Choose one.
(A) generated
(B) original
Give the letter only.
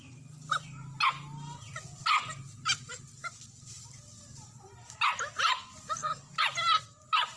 B